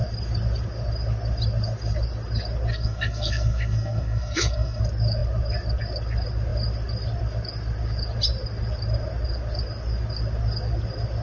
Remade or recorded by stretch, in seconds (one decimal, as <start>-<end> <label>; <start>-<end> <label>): 0.0-2.7 recorded; 2.7-4.8 remade; 4.8-11.2 recorded